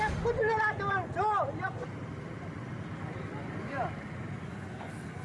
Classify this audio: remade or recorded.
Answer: recorded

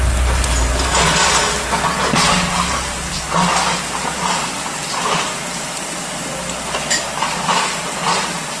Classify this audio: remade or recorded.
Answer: recorded